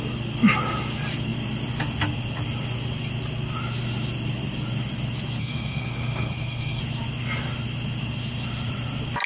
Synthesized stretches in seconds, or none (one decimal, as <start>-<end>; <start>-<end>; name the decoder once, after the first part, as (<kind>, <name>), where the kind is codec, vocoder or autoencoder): 5.4-6.8 (codec, SNAC)